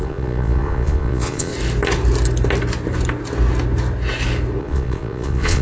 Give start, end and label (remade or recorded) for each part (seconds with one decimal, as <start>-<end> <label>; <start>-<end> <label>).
0.0-1.5 remade; 1.5-4.6 recorded; 4.6-5.6 remade